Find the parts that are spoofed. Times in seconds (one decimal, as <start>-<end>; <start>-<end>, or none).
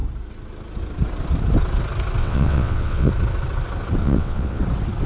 2.2-3.1; 4.0-4.6